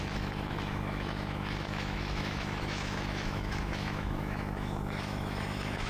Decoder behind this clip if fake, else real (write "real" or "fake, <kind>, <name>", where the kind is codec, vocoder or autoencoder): fake, autoencoder, DAC-VAE